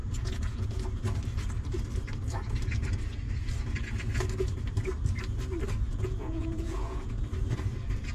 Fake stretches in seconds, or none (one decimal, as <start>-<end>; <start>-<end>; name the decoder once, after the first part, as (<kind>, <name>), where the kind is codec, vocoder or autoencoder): 0.0-0.7 (vocoder, Vocos); 5.9-7.2

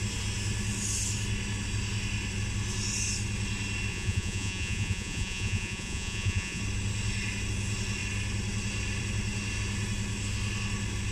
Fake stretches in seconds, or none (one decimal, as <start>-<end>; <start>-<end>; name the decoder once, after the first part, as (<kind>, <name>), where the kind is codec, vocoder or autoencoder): 3.9-6.6 (vocoder, Vocos)

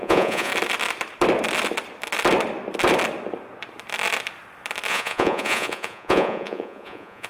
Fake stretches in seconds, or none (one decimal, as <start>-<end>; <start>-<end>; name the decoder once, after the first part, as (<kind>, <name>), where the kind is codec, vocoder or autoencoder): 0.0-0.5 (vocoder, Vocos); 4.9-7.3

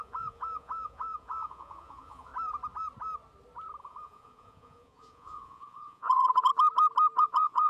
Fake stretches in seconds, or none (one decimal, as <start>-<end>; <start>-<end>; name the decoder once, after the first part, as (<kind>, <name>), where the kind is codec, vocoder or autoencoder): 0.0-2.3 (vocoder, Vocos); 3.8-6.5; 7.2-7.7